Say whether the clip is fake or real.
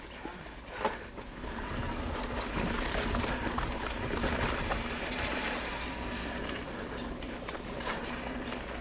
real